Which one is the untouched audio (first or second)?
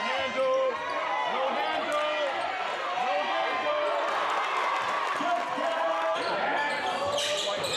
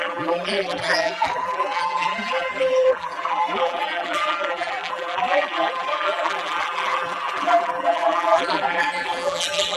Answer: first